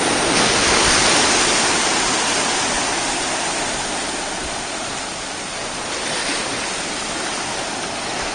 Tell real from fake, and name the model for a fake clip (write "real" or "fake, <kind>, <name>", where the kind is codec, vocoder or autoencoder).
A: real